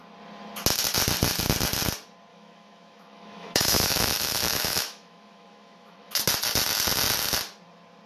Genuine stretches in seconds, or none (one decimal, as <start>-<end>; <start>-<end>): 0.0-2.3; 6.2-8.1